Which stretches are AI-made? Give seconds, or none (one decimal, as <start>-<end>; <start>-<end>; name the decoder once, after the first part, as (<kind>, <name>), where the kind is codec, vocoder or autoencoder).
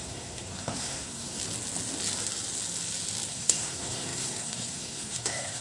0.0-1.4 (codec, SNAC); 3.3-5.6